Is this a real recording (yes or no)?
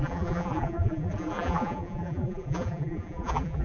no